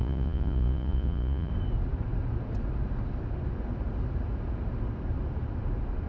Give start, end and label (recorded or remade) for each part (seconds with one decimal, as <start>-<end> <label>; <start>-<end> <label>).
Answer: 0.0-1.5 remade; 1.5-6.1 recorded